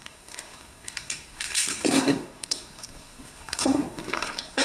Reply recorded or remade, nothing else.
remade